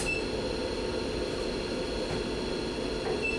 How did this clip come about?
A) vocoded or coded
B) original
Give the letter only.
B